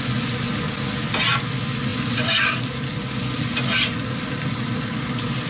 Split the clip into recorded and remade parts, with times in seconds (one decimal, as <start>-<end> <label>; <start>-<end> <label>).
0.0-5.5 recorded